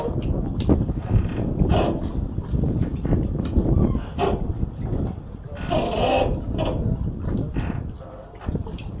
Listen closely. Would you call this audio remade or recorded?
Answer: recorded